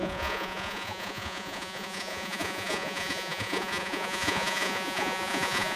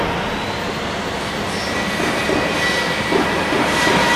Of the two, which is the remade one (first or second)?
first